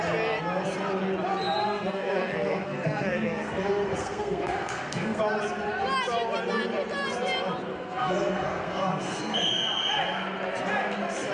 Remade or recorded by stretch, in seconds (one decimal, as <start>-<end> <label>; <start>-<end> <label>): 0.0-1.6 recorded; 1.6-5.2 remade; 5.2-7.7 recorded; 7.7-9.5 remade; 9.5-11.3 recorded